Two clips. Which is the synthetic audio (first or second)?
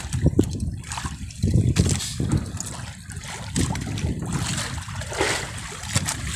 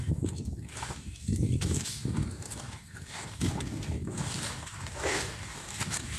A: second